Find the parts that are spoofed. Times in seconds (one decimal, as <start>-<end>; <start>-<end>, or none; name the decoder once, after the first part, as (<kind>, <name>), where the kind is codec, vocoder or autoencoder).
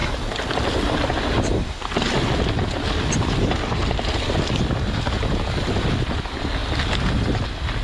none